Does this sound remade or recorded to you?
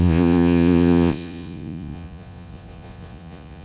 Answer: remade